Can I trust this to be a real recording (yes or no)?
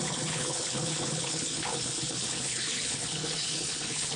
no